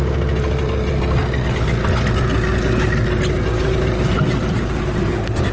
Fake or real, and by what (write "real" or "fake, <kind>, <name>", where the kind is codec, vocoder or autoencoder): real